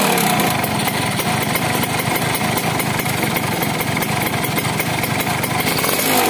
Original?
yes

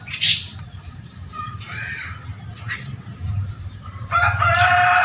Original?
no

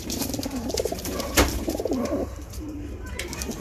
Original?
no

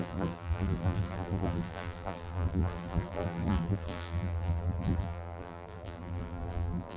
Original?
no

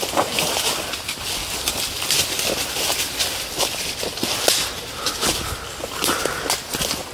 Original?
yes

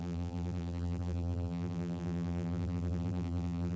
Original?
no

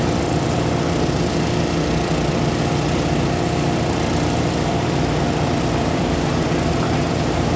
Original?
no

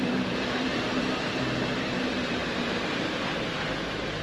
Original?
no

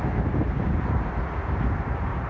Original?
yes